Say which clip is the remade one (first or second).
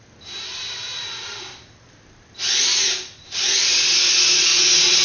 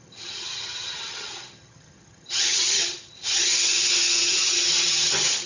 second